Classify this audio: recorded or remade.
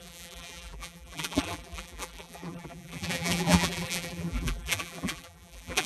remade